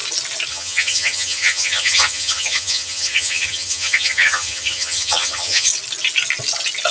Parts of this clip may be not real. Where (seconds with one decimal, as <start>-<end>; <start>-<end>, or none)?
0.5-5.7